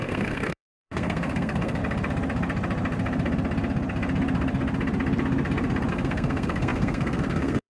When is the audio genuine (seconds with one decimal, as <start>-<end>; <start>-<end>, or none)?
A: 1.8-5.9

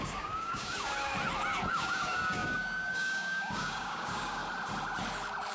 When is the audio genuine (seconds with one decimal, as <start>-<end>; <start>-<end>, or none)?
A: 1.1-1.7; 4.4-5.5

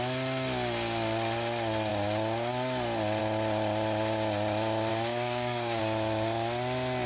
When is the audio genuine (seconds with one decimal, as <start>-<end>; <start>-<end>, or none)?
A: 0.0-4.9; 5.8-7.1

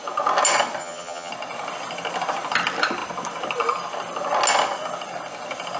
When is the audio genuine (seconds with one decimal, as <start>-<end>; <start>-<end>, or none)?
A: 0.0-0.8; 1.3-5.8

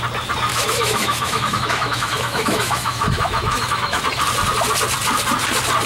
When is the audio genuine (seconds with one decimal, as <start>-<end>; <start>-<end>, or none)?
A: 0.0-0.5; 4.0-5.9